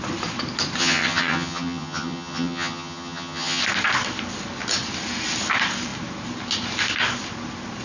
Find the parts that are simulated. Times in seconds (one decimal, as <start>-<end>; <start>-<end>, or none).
0.8-3.6